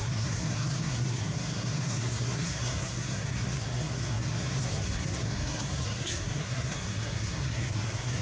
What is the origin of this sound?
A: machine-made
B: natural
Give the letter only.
A